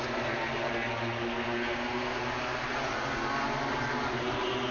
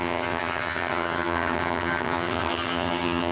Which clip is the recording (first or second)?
first